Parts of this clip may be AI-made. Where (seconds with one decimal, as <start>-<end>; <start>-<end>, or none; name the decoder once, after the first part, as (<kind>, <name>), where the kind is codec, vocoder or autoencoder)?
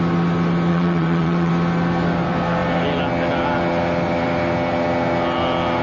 0.7-1.5 (vocoder, WaveNeXt)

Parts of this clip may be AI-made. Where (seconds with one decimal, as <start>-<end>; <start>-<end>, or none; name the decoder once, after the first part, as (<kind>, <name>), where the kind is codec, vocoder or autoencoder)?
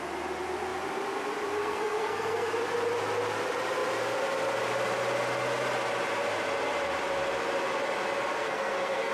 1.6-2.5 (codec, SNAC); 8.4-9.1